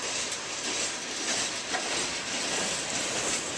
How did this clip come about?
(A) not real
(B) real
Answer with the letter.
B